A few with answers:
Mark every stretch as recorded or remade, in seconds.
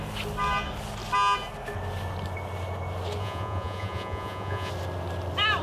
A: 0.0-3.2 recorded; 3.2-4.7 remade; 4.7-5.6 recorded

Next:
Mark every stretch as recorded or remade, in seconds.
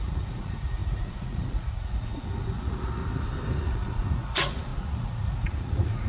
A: 0.0-3.0 remade; 3.0-3.6 recorded; 3.6-6.1 remade